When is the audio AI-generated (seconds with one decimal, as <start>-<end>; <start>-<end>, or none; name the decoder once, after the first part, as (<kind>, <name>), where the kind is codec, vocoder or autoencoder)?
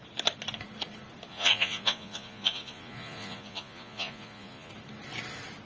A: 1.3-4.7 (vocoder, Vocos)